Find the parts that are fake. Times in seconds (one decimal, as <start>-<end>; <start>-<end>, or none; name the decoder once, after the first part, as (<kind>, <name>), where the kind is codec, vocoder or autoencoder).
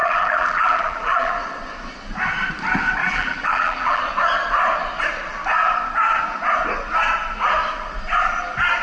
0.0-1.3 (vocoder, BigVGAN v2); 3.0-4.0